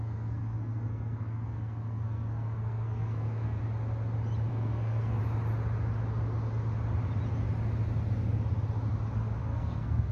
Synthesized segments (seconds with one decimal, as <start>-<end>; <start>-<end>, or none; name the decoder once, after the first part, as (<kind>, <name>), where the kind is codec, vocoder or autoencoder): 0.0-3.6 (codec, SNAC); 4.5-5.2; 9.4-10.1